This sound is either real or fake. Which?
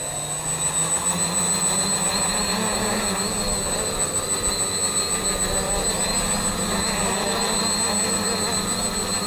real